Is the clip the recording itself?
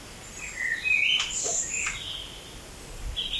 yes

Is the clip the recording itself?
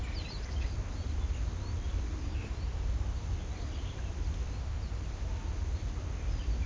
yes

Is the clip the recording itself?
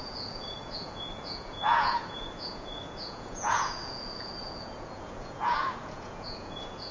no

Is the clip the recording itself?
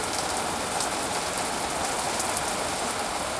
yes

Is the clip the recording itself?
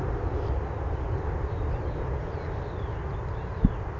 yes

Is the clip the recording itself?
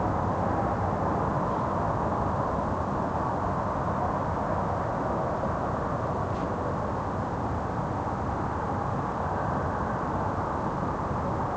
yes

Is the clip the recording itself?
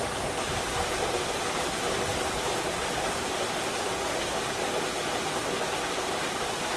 yes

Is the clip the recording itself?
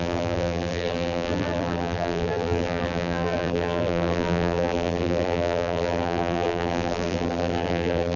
no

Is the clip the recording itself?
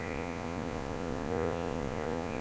no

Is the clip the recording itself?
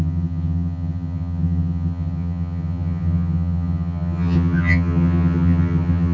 no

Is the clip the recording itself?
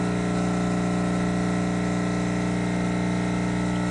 yes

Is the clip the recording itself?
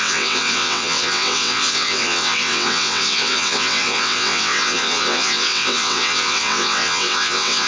no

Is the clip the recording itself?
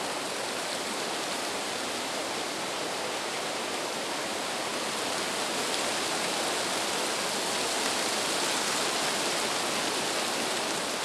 yes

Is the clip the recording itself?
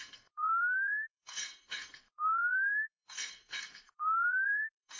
no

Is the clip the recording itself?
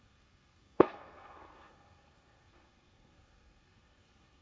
no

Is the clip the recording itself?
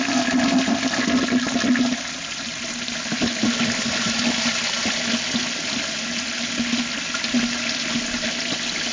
yes